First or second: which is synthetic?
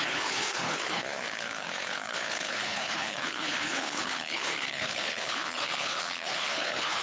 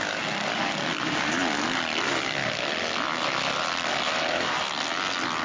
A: first